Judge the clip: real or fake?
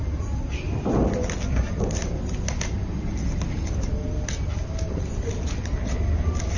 real